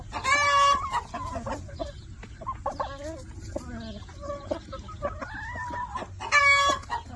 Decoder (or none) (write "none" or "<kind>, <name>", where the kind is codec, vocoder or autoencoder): none